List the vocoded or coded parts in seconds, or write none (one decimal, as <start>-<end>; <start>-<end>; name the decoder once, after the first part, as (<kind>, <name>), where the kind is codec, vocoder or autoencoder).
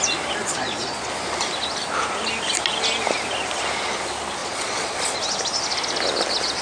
0.4-1.1 (vocoder, Vocos); 4.4-5.2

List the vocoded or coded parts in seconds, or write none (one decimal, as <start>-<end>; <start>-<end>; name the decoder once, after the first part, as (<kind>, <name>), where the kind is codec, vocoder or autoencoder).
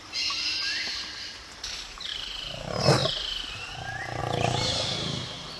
none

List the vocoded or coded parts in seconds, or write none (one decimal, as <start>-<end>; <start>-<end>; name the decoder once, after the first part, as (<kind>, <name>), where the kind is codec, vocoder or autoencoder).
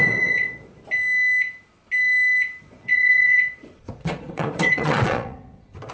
0.0-0.8 (vocoder, Vocos); 2.6-5.9